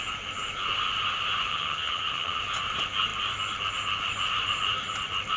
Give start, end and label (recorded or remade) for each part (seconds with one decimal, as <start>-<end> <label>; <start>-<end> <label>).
0.0-1.5 recorded; 1.5-2.4 remade; 2.4-5.4 recorded